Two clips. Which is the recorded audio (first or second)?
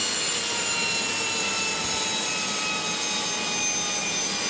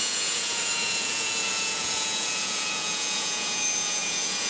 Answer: first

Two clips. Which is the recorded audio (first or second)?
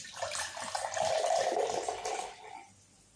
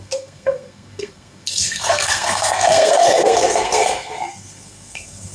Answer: first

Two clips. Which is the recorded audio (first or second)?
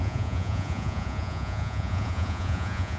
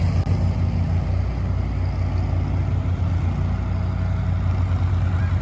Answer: second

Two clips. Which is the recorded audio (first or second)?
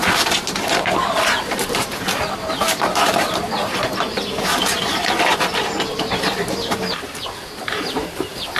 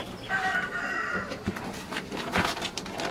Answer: second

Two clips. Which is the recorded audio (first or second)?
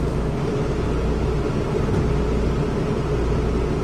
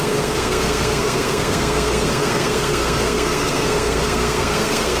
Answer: first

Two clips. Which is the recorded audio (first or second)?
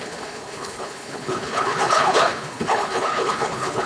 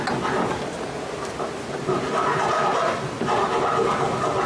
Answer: second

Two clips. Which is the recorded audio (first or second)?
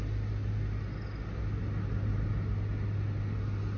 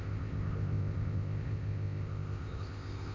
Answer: first